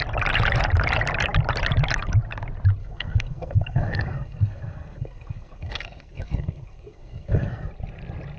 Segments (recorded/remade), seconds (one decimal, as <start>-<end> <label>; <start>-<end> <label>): 0.0-2.8 recorded; 2.8-7.7 remade; 7.7-8.4 recorded